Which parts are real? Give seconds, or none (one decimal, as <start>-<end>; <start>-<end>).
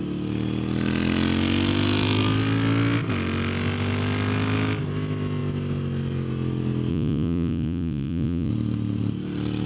0.0-6.9; 8.5-9.7